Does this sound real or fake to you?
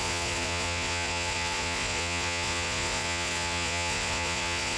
fake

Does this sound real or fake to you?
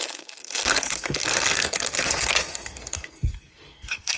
fake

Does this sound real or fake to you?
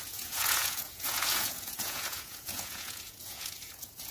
fake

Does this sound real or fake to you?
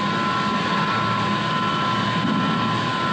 real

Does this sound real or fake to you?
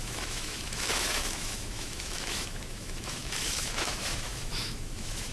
fake